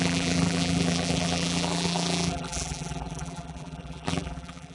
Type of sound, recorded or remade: remade